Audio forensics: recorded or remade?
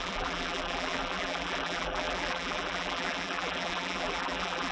remade